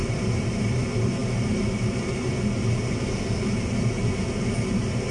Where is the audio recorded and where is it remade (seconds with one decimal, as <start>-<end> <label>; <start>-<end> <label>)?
0.0-0.5 remade; 0.5-5.1 recorded